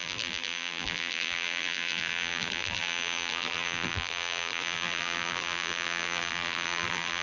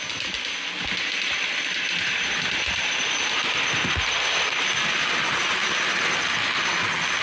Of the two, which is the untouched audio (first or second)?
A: second